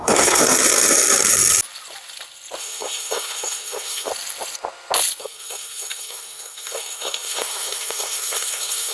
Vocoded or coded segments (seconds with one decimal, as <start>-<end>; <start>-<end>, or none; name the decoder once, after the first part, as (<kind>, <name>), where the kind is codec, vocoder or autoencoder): 0.0-0.4 (codec, SNAC); 2.6-4.1; 5.2-8.9